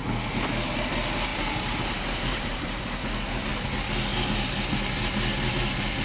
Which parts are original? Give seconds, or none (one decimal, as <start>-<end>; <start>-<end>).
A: 0.0-1.3; 2.8-6.0